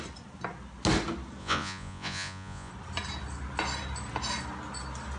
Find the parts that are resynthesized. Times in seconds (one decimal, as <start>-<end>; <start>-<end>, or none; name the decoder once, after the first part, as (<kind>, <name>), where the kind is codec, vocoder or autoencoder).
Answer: 1.4-2.7 (vocoder, Vocos)